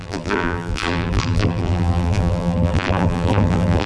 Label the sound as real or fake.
fake